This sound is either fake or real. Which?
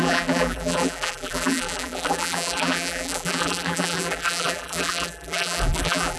fake